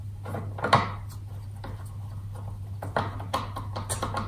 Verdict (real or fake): real